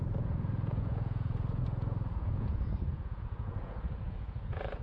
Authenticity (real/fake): fake